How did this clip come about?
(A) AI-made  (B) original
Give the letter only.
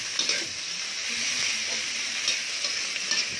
B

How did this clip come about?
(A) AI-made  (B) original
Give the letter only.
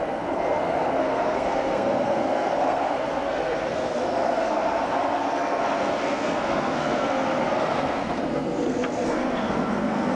A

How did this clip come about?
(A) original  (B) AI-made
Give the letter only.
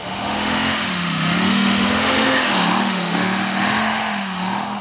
B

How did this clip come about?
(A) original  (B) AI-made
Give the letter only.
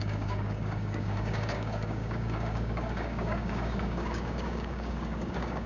B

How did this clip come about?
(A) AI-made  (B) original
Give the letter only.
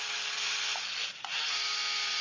B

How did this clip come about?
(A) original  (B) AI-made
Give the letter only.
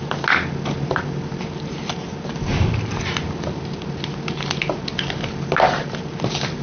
A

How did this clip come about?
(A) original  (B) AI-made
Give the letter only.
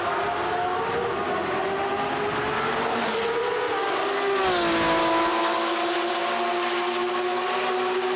A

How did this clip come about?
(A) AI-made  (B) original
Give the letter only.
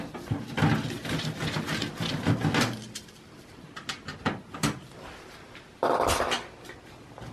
B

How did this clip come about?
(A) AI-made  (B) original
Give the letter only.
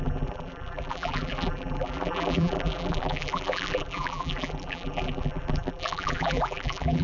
A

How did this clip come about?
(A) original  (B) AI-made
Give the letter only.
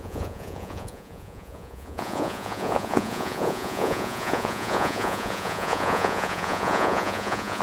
B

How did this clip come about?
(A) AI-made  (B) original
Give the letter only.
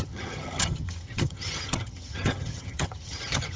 A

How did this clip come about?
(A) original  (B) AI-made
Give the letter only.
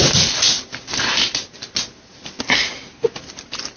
A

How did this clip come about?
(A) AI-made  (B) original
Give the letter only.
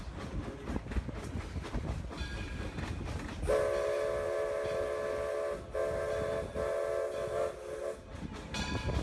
B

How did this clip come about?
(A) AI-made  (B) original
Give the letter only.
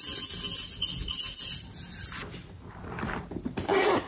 B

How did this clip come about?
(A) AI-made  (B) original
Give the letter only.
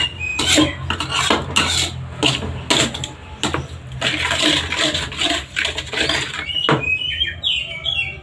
B